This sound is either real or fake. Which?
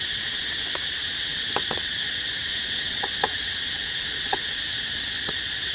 fake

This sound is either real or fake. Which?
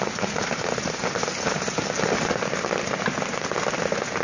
real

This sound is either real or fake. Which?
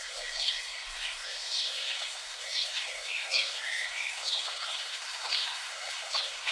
fake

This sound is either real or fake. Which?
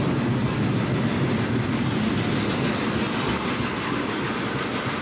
real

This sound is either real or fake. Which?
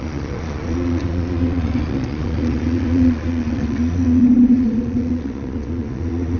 fake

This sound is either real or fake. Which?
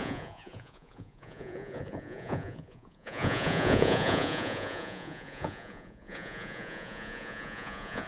fake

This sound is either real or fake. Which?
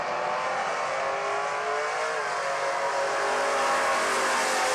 real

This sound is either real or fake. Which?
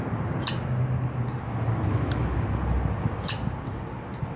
real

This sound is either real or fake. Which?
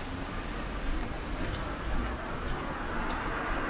real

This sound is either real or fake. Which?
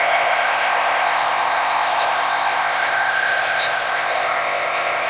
fake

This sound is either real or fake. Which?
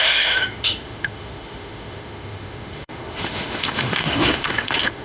fake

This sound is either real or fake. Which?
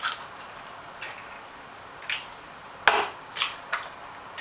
real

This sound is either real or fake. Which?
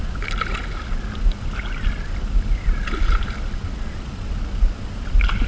real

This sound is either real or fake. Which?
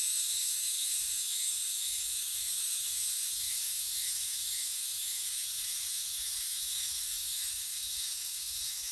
fake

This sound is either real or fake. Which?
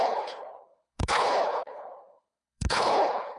fake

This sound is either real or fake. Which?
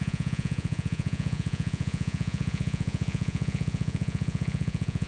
fake